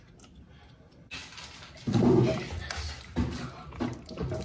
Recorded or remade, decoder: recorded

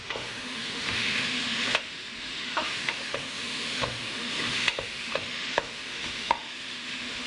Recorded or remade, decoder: remade, autoencoder, DAC-VAE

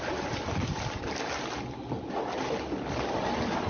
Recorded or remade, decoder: recorded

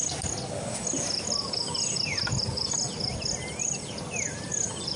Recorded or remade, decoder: recorded